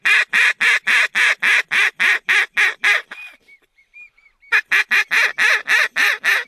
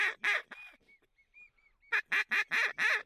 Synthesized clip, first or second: first